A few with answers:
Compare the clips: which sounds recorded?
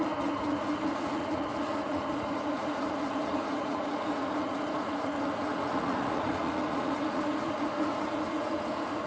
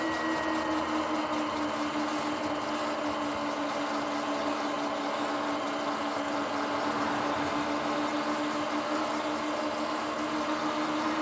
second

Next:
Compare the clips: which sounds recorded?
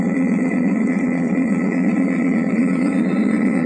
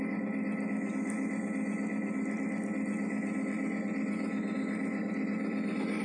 second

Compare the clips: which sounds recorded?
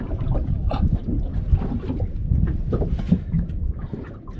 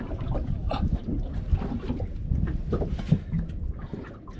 second